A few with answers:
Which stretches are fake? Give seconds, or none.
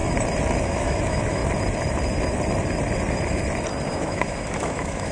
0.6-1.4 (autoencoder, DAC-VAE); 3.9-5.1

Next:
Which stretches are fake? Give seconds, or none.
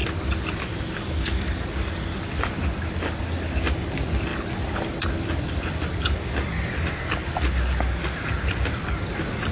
none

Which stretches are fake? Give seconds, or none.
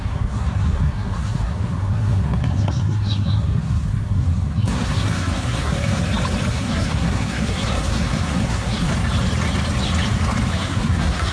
0.0-6.0 (codec, SNAC); 6.5-8.9; 10.5-11.3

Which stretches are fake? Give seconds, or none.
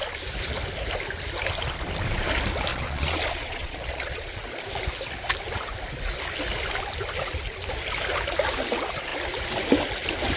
2.7-4.4 (vocoder, Vocos)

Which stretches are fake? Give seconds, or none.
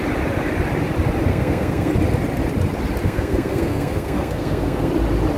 1.3-1.9 (codec, SNAC); 3.0-4.9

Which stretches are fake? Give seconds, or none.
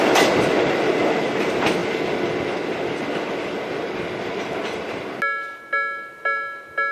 none